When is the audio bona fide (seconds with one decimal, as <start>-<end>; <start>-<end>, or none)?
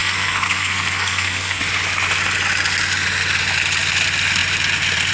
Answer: 1.6-5.1